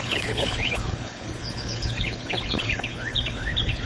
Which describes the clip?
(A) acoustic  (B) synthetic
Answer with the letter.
B